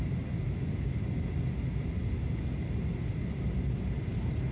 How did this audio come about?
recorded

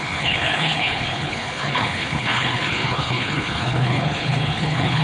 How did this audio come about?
remade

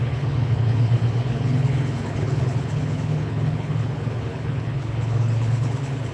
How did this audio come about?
remade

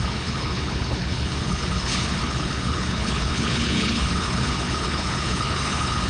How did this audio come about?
remade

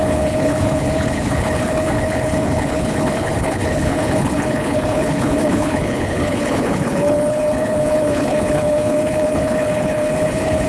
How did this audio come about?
remade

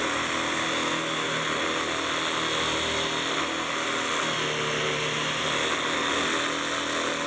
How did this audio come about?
recorded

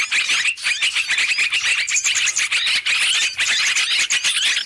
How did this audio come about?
recorded